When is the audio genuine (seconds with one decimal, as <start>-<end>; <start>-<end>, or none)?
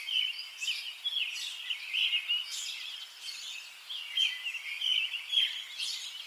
0.0-6.3